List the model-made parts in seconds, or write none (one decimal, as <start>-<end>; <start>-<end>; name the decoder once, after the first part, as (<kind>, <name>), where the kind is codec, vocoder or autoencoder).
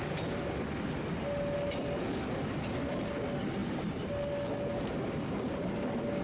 none